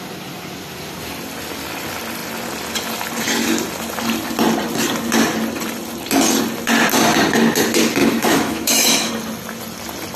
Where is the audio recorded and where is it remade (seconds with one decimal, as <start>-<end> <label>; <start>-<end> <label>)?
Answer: 0.0-8.0 recorded; 8.0-9.1 remade; 9.1-10.2 recorded